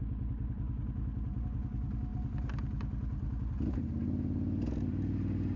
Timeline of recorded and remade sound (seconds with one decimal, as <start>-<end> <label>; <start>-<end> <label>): 0.0-5.6 recorded